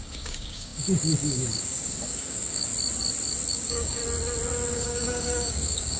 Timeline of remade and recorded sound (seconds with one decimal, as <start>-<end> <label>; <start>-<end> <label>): 0.0-2.7 remade; 2.7-3.5 recorded; 3.5-4.0 remade; 4.0-4.7 recorded; 4.7-6.0 remade